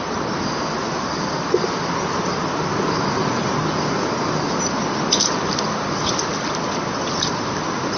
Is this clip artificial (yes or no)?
no